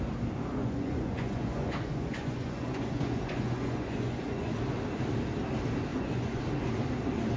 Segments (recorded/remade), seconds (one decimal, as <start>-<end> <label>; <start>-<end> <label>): 0.0-0.6 recorded; 0.6-4.5 remade; 4.5-5.9 recorded; 5.9-6.4 remade; 6.4-7.4 recorded